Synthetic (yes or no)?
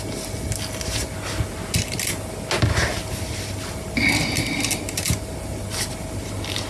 no